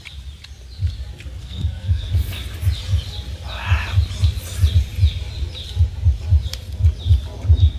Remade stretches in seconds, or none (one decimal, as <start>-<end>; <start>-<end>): 1.4-2.1